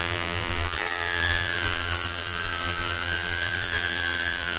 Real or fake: fake